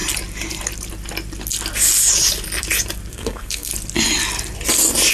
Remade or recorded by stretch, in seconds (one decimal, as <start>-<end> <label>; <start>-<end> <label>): 0.0-3.1 recorded; 3.1-3.7 remade; 3.7-5.1 recorded